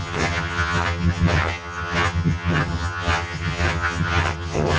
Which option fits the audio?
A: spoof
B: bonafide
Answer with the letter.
A